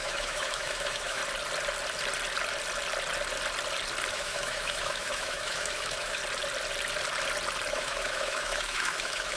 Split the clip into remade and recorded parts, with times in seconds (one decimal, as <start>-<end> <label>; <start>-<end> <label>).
0.0-1.2 remade; 1.2-4.1 recorded; 4.1-6.2 remade; 6.2-7.7 recorded; 7.7-9.4 remade